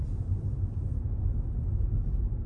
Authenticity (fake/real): real